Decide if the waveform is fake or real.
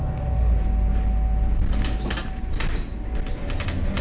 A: real